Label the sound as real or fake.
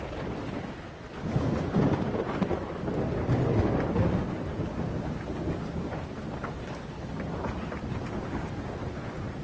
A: real